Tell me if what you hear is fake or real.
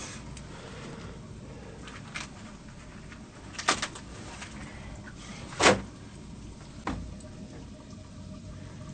real